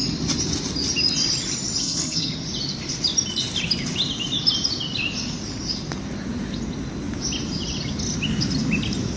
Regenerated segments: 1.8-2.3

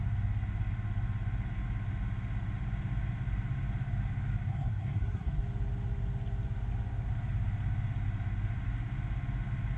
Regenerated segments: 4.5-5.4

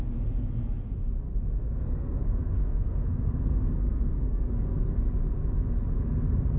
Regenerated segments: 1.3-5.0

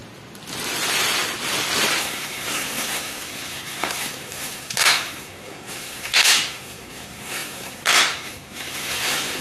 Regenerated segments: 2.0-9.4